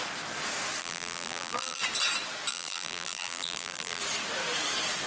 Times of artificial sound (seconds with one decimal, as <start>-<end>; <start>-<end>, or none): 0.8-1.8; 2.5-4.0